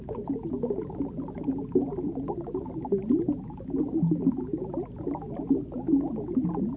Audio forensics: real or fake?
real